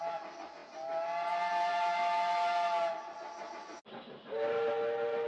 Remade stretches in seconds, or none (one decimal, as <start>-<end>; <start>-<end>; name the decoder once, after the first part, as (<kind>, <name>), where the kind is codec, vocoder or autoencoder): none